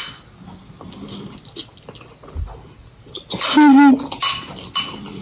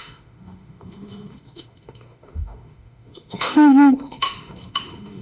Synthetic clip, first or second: second